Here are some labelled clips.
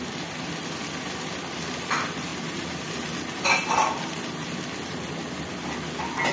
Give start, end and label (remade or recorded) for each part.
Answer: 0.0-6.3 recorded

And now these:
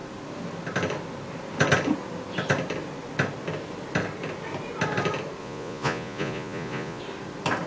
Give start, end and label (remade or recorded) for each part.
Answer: 0.0-5.4 recorded; 5.4-7.0 remade; 7.0-7.7 recorded

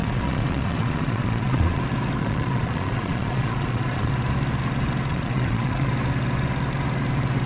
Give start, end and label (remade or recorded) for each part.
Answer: 0.0-1.8 remade; 1.8-2.2 recorded; 2.2-4.1 remade; 4.1-5.1 recorded; 5.1-5.9 remade; 5.9-7.5 recorded

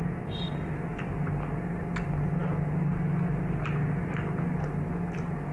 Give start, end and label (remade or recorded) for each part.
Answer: 0.0-5.5 recorded

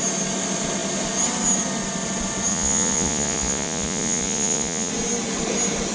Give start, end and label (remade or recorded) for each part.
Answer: 0.0-2.5 recorded; 2.5-4.9 remade; 4.9-5.9 recorded